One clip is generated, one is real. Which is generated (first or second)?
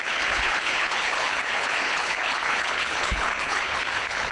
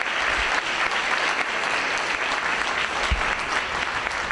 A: first